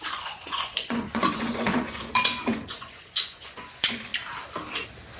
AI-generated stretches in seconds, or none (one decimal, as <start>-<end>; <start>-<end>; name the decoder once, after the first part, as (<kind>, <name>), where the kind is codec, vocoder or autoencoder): 0.0-4.1 (vocoder, Vocos)